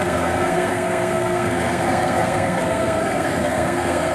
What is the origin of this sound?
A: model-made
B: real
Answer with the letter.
A